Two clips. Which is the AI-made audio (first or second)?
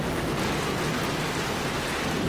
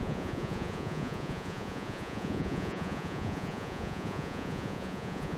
second